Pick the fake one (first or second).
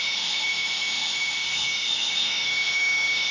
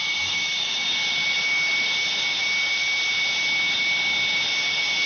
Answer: first